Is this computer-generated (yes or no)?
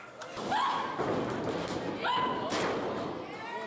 no